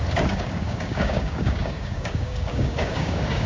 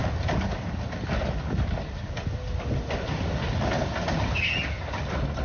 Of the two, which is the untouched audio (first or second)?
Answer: second